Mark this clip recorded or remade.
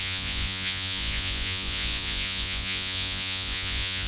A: remade